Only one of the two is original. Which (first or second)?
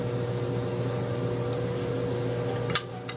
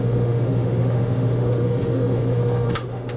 first